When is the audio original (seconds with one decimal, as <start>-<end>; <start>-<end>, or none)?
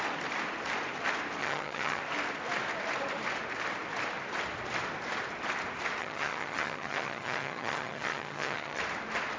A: 0.0-1.4; 2.0-6.0; 8.8-9.4